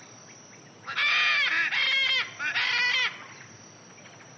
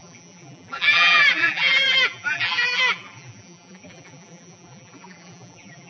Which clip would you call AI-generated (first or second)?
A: second